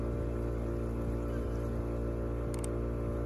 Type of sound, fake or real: real